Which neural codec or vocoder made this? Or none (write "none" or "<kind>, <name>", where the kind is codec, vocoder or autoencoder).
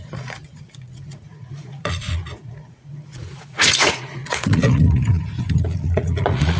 vocoder, Vocos